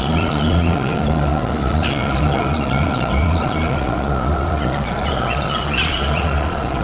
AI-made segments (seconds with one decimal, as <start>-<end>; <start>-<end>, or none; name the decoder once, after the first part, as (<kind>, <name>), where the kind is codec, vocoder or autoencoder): 0.0-6.8 (vocoder, Vocos)